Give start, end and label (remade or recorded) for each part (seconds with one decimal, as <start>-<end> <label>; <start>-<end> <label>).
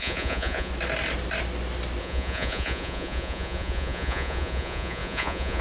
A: 0.0-0.7 remade; 0.7-2.0 recorded; 2.0-5.6 remade